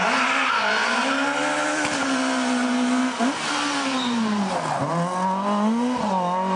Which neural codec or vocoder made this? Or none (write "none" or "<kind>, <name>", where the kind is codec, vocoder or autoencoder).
none